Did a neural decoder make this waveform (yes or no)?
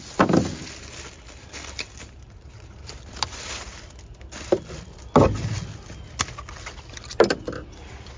no